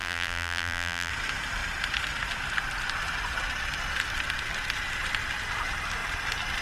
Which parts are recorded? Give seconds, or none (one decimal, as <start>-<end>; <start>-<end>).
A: 1.1-6.6